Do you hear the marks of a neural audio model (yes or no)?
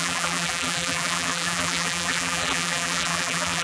yes